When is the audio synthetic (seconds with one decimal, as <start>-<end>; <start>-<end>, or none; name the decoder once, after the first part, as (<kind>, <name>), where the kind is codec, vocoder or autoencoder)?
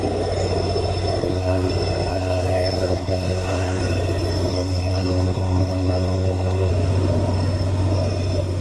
1.2-1.7 (codec, SNAC); 2.1-3.8; 4.5-6.7